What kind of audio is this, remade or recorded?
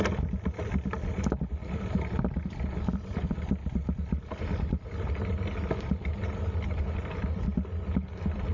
recorded